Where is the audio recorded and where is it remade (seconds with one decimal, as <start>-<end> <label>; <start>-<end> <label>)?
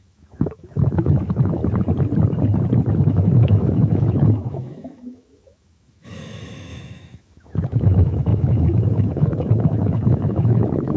0.0-1.6 remade; 1.6-3.0 recorded; 3.0-11.0 remade